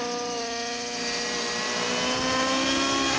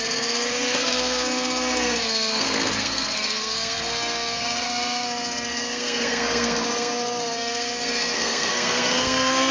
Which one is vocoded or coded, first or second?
second